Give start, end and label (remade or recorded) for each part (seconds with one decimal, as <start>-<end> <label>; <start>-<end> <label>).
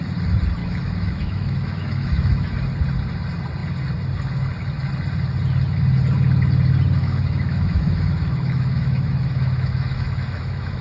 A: 0.0-0.6 recorded; 0.6-2.5 remade; 2.5-7.0 recorded; 7.0-10.8 remade